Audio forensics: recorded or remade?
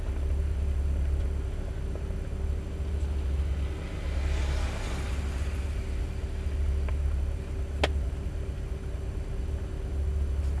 recorded